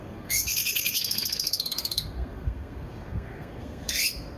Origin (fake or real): fake